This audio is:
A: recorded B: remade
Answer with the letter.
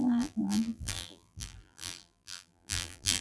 B